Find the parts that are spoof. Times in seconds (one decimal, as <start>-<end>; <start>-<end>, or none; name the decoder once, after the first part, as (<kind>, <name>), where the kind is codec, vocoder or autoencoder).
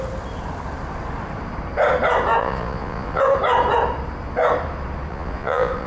2.4-3.2 (vocoder, Vocos); 5.1-5.9